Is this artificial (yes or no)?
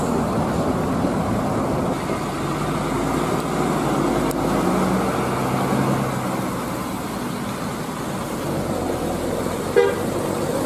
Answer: no